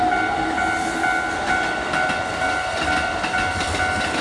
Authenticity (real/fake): real